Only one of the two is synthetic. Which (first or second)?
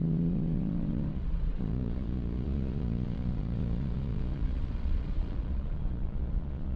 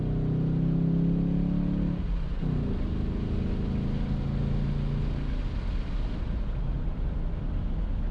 first